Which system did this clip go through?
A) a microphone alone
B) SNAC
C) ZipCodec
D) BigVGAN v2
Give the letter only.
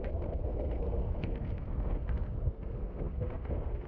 B